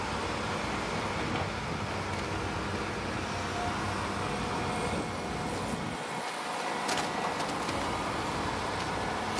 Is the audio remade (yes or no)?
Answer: no